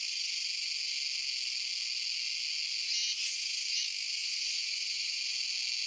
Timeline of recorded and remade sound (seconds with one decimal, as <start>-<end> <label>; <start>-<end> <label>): 0.0-4.2 recorded; 4.2-5.2 remade; 5.2-5.9 recorded